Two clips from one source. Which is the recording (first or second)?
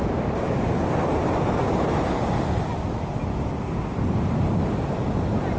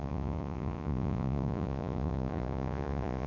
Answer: first